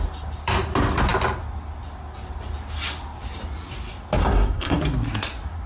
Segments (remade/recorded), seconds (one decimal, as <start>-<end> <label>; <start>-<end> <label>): 0.0-4.2 recorded; 4.2-4.8 remade; 4.8-5.7 recorded